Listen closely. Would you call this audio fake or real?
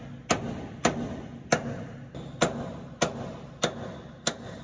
real